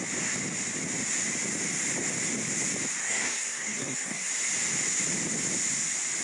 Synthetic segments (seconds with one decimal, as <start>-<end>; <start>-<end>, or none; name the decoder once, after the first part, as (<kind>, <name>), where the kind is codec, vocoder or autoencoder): 3.0-4.3 (codec, SNAC)